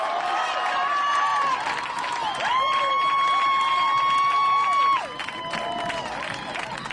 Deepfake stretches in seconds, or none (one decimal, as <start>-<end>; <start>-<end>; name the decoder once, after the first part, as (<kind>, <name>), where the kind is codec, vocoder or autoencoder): none